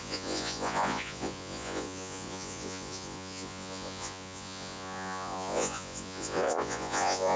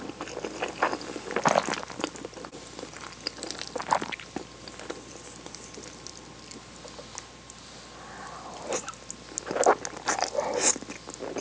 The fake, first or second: first